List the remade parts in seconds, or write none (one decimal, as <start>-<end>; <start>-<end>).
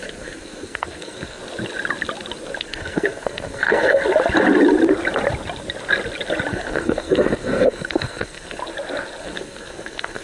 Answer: 0.0-1.4; 2.6-4.0; 6.5-8.6; 9.2-10.2